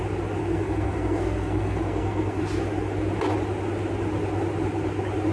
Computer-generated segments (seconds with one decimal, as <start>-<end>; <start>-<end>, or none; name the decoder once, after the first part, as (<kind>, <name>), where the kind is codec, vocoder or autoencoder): 0.4-2.4 (codec, SNAC)